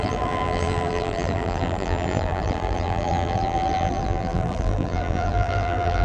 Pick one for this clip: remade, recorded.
remade